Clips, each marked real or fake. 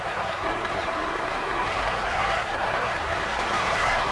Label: fake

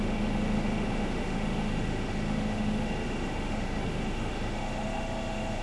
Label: fake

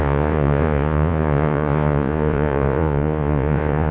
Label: fake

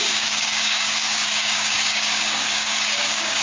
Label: fake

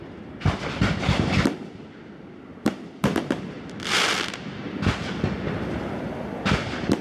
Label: real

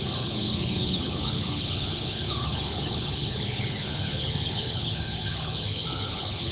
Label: fake